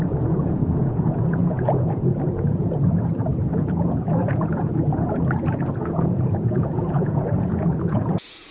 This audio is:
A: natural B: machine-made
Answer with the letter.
B